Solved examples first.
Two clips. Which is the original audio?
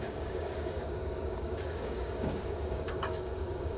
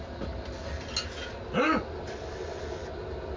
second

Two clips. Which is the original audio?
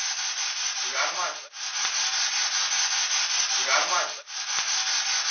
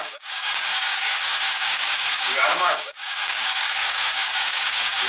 first